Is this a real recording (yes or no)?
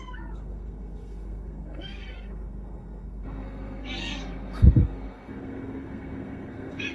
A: no